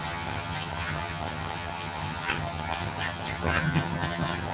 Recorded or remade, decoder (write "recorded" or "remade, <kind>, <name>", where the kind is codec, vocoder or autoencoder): remade, vocoder, HiFi-GAN